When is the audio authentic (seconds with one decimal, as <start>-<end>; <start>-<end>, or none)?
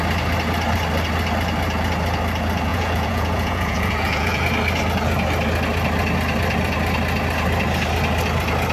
0.0-2.7; 4.4-8.7